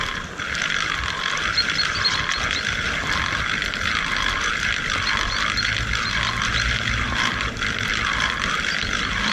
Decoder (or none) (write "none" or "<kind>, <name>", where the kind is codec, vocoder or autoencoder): none